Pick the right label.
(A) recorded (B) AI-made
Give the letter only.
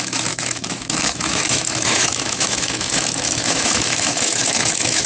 B